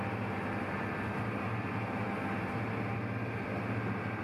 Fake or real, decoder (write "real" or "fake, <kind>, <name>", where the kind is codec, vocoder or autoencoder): real